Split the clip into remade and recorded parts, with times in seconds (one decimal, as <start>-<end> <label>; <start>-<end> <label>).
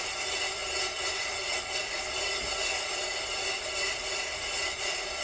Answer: 0.0-5.2 recorded